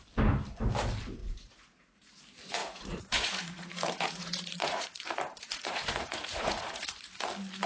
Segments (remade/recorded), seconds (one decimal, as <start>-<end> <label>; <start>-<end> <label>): 0.0-1.2 recorded; 1.2-2.2 remade; 2.2-2.6 recorded; 2.6-7.2 remade; 7.2-7.7 recorded